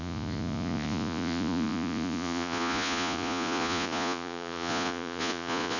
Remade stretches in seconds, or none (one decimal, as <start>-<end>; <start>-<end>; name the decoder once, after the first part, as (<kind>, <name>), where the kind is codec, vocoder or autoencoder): 0.0-5.8 (vocoder, Vocos)